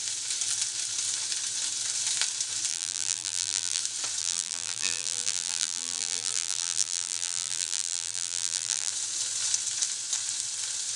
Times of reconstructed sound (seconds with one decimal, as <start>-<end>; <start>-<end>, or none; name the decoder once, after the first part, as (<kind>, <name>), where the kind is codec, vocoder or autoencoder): 2.7-3.8 (vocoder, BigVGAN v2); 4.2-8.9